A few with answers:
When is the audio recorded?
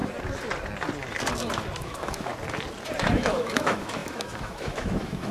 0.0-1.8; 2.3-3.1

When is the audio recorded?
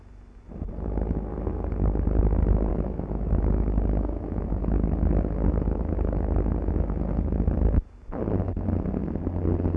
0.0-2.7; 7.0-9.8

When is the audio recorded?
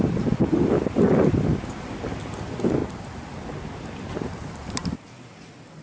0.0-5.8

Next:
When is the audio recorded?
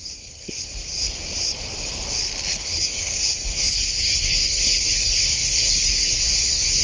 0.7-2.5